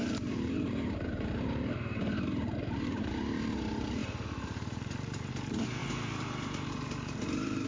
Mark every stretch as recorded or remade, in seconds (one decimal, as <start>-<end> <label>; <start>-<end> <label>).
0.0-7.7 remade